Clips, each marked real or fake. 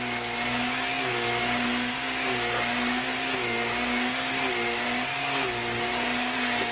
real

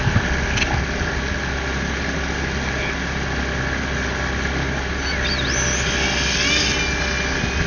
real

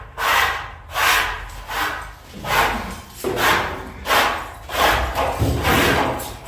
real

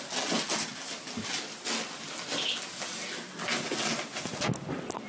real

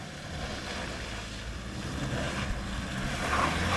real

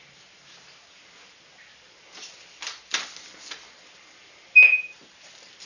real